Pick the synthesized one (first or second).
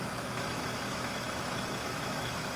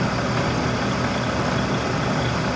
first